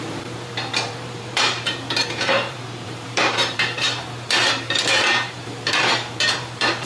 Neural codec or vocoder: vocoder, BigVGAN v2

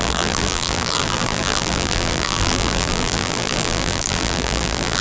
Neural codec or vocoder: vocoder, BigVGAN v2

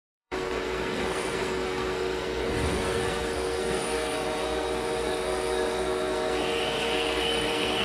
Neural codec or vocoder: codec, SNAC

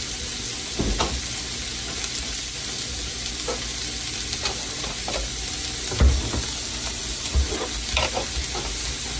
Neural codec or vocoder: none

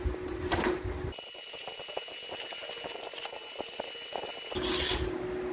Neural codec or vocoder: none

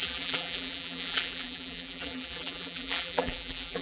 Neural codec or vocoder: vocoder, BigVGAN v2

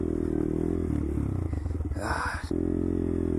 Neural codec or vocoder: none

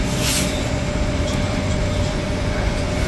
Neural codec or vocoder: vocoder, Vocos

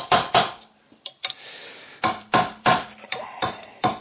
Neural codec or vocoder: vocoder, BigVGAN v2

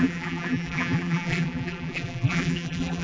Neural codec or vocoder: vocoder, BigVGAN v2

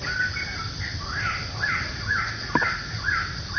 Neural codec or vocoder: none